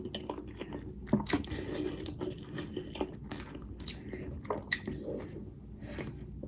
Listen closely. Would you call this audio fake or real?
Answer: real